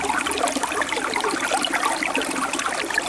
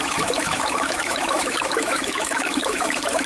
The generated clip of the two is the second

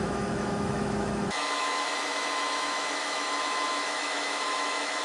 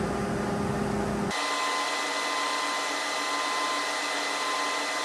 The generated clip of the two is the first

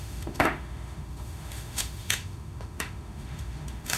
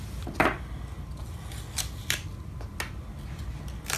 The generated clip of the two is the first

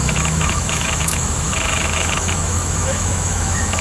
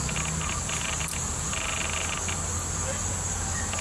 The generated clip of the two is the first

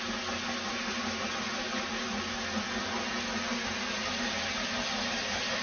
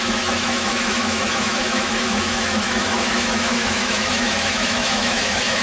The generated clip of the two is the second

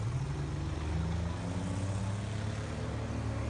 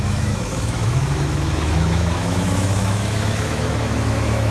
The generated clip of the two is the second